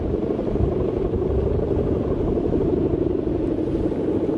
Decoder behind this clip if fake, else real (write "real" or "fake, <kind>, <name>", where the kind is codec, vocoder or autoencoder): real